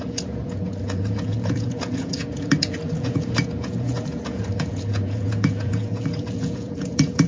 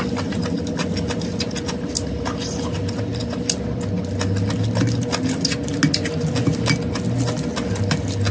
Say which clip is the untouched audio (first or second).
second